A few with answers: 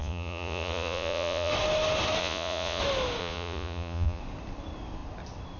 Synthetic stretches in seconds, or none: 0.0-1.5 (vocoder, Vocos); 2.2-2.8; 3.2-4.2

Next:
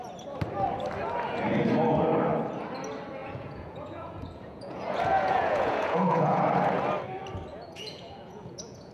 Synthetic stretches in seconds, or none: 3.2-6.4 (vocoder, Vocos); 7.5-8.9

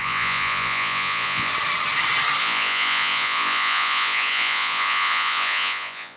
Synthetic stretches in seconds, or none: 0.0-1.5 (vocoder, Vocos); 2.4-6.2

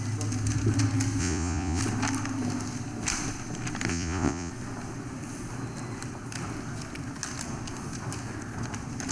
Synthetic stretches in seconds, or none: 1.2-1.8 (vocoder, Vocos); 3.9-4.5